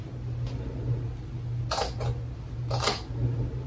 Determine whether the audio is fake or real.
real